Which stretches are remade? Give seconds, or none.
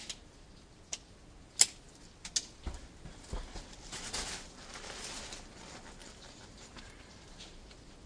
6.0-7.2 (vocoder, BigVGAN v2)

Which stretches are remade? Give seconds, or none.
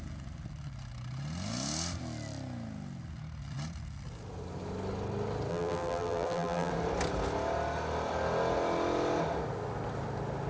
5.5-6.7 (vocoder, BigVGAN v2)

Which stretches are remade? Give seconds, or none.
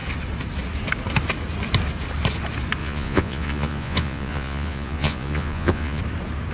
2.8-6.0 (vocoder, Vocos)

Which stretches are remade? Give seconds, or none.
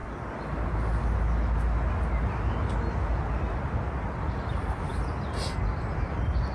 none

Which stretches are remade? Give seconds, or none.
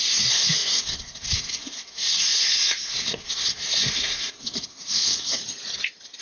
0.0-5.4 (codec, SNAC)